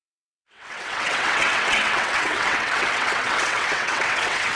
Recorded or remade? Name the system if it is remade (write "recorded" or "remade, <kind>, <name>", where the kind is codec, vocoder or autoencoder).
remade, vocoder, WaveNeXt